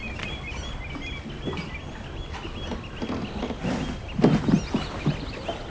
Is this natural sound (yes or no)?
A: yes